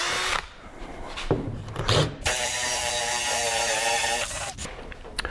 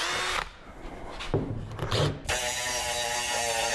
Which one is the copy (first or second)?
first